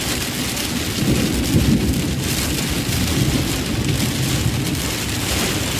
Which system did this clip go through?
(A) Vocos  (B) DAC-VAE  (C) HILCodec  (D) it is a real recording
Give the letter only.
D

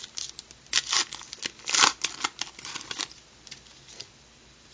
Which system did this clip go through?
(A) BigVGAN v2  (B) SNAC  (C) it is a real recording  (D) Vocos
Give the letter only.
C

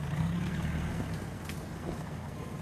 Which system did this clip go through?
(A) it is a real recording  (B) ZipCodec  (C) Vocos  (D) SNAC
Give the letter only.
D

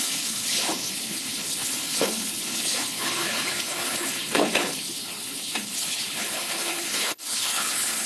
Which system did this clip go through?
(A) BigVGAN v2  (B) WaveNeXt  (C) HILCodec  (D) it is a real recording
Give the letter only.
C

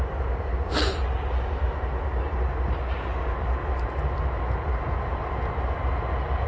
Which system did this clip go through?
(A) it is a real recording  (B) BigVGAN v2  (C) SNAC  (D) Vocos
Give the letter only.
A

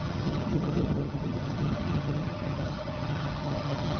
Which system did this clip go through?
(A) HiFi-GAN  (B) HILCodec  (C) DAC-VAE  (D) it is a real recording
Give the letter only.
A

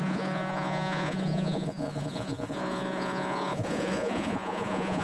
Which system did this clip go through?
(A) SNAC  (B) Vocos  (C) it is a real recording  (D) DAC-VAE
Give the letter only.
B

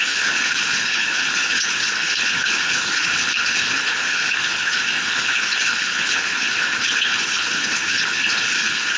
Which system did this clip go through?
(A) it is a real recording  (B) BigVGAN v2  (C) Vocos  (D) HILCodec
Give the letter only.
D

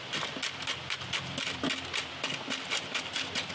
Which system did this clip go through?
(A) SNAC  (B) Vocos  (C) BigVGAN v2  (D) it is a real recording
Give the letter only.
C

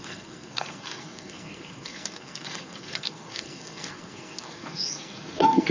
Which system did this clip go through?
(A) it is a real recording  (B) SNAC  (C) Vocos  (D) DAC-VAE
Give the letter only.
B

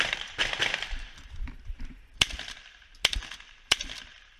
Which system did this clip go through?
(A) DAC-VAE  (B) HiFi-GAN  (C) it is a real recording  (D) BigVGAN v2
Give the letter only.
D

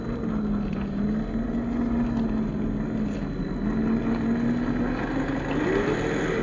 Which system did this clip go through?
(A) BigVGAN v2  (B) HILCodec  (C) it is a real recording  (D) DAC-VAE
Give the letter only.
C